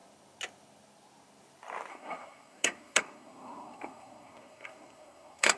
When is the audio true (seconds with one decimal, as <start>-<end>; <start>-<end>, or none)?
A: 0.0-1.9